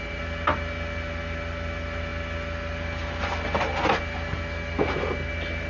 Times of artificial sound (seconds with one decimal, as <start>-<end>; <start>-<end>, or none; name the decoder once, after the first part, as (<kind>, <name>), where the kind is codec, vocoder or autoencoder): none